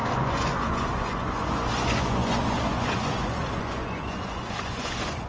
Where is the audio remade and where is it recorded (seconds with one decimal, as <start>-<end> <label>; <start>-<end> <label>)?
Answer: 0.0-5.3 remade